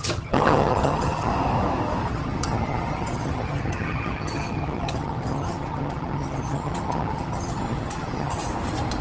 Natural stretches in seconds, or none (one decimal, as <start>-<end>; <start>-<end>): 1.3-2.1; 8.4-9.0